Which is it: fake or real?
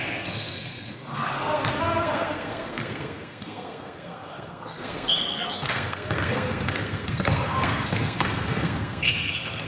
fake